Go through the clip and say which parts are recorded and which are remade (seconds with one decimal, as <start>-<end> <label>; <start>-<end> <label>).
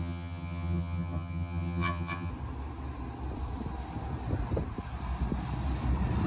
0.0-2.3 remade; 2.3-6.3 recorded